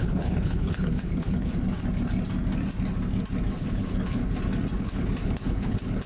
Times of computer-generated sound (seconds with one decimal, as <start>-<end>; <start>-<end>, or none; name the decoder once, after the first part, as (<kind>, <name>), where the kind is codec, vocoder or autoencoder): 0.0-1.5 (codec, HILCodec); 3.6-4.2; 4.8-6.1